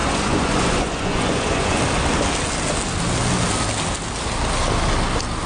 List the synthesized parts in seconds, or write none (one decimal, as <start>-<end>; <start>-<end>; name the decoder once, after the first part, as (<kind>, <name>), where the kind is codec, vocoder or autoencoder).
0.0-1.8 (vocoder, Vocos)